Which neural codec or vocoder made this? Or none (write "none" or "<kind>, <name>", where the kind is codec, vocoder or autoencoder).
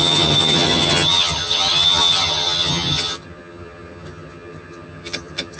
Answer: vocoder, HiFi-GAN